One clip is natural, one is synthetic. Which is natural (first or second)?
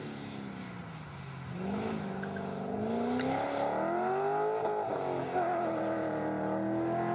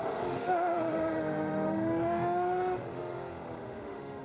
first